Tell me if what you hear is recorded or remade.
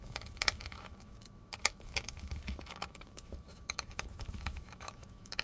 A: remade